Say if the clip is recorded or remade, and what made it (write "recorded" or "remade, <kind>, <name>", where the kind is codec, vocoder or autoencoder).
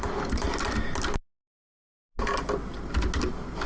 recorded